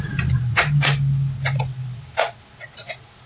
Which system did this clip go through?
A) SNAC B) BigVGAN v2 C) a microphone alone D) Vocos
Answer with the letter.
C